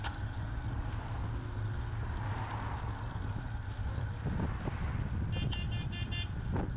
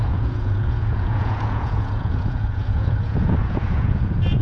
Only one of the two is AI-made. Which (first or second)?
second